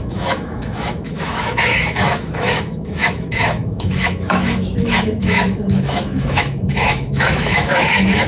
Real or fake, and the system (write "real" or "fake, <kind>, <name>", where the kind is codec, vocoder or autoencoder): fake, autoencoder, DAC-VAE